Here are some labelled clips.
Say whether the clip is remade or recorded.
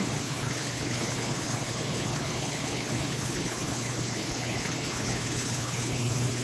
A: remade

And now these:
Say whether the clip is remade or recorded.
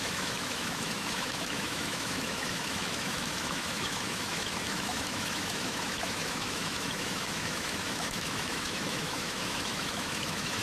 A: remade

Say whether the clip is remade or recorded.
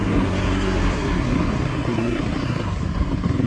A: remade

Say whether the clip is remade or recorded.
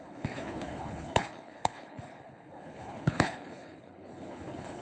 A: remade